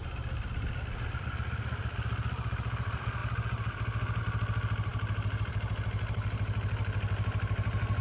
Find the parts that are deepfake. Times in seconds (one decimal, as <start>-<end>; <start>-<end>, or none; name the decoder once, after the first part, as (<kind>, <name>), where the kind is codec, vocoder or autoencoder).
none